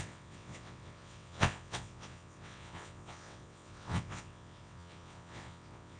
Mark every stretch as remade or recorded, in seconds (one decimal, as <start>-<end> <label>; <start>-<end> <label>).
0.0-6.0 remade